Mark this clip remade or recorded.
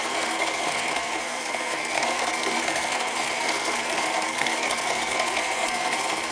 remade